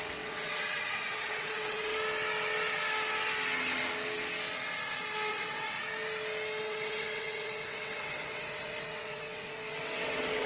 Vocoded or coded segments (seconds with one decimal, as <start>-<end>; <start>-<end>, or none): 0.0-1.9; 5.3-5.8; 6.6-10.5